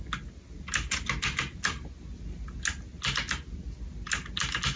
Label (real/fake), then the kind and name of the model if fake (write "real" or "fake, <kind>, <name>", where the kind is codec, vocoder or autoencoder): real